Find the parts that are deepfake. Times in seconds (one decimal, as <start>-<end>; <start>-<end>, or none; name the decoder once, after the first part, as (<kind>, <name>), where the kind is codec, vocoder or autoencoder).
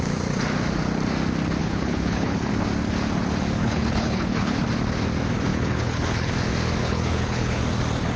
1.6-2.5 (codec, HILCodec); 3.6-4.5; 5.5-6.3; 6.8-7.6